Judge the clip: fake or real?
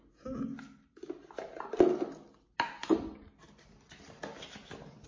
real